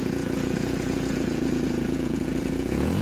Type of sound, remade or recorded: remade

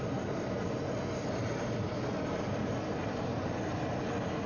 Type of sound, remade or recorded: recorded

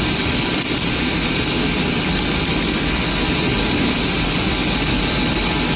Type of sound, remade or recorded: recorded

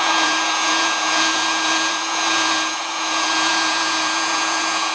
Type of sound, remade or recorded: remade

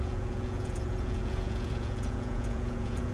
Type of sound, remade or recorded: remade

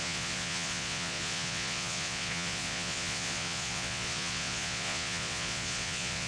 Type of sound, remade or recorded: remade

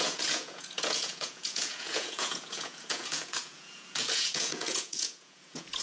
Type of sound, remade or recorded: remade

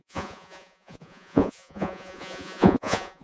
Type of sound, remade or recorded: remade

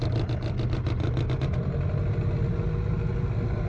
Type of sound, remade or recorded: recorded